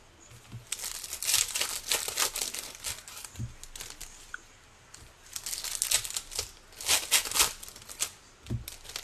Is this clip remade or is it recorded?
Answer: recorded